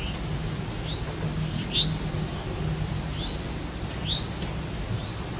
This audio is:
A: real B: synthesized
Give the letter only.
A